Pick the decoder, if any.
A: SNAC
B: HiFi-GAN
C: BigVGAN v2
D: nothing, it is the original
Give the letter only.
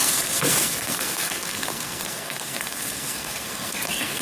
A